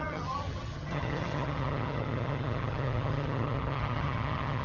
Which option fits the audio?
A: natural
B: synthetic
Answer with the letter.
B